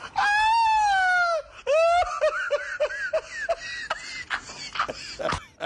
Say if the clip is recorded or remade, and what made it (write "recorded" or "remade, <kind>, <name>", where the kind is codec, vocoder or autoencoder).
recorded